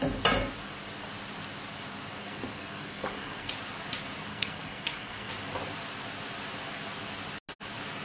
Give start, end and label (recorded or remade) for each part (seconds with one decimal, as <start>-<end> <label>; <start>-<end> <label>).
0.0-2.2 recorded; 2.2-3.5 remade; 3.5-4.3 recorded; 4.3-5.3 remade; 5.3-8.0 recorded